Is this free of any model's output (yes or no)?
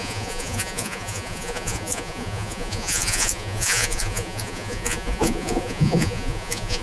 no